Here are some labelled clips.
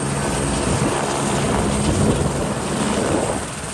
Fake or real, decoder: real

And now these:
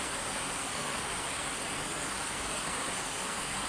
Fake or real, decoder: fake, codec, SNAC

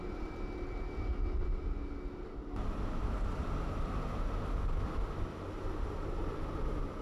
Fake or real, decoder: real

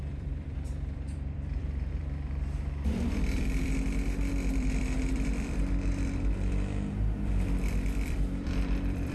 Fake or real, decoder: fake, vocoder, BigVGAN v2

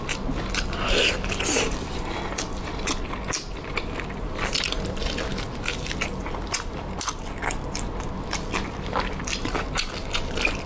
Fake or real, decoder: real